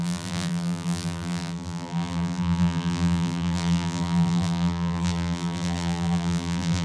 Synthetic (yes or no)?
yes